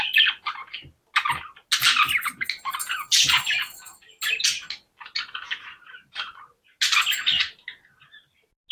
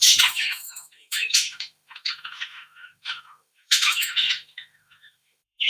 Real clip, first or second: first